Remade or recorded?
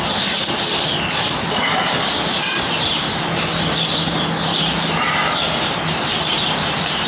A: recorded